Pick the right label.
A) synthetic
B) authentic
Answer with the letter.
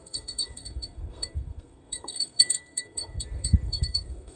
A